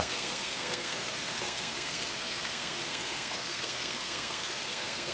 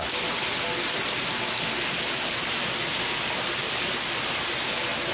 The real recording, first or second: second